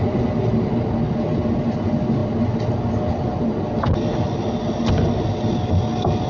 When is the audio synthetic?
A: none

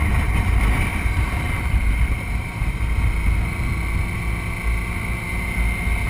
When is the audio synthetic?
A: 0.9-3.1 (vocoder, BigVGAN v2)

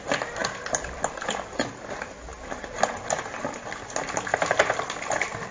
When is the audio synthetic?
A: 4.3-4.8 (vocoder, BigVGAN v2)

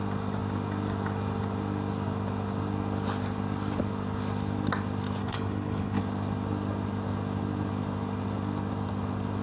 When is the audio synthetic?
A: 5.2-6.0 (codec, HILCodec)